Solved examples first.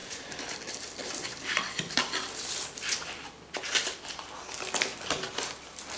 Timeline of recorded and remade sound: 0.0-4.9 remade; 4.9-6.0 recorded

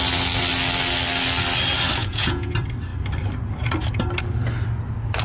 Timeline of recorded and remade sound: 0.0-2.0 recorded; 2.0-2.5 remade; 2.5-5.2 recorded

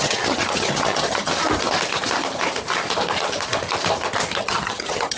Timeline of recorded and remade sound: 0.0-1.3 remade; 1.3-4.4 recorded; 4.4-5.2 remade